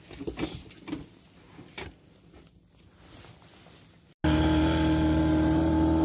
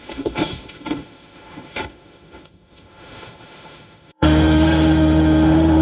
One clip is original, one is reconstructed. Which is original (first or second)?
first